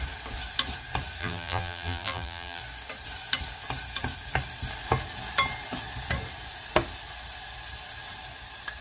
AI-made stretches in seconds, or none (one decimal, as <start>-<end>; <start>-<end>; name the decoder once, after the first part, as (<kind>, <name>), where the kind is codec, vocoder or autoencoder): 1.2-2.6 (vocoder, BigVGAN v2)